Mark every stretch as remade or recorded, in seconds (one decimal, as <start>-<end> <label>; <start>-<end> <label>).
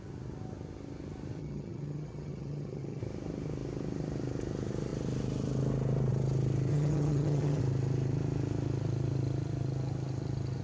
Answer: 0.0-1.4 recorded; 1.4-3.0 remade; 3.0-6.7 recorded; 6.7-7.6 remade; 7.6-10.6 recorded